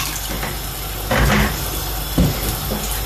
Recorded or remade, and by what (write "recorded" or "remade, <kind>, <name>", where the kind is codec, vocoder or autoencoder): recorded